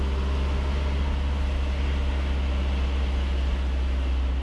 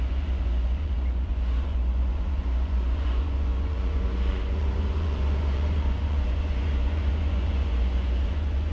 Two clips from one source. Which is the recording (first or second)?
first